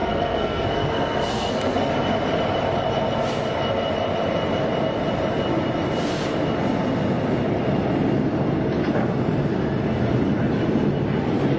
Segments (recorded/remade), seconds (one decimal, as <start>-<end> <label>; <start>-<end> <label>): 0.0-1.9 remade; 1.9-11.6 recorded